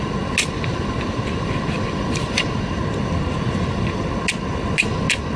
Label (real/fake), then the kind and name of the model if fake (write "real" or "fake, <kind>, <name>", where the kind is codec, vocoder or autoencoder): real